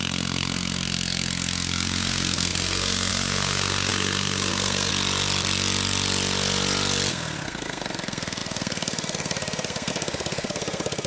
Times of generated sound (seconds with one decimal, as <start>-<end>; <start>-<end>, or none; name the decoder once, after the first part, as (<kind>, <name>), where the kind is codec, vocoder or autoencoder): 0.0-4.9 (codec, SNAC); 7.1-11.1